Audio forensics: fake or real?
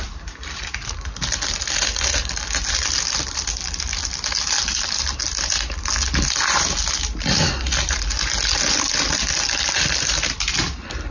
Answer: real